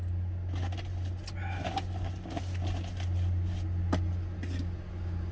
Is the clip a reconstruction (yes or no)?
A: no